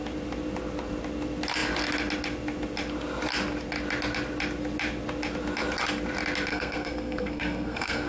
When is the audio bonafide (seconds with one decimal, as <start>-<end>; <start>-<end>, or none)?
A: 0.0-6.5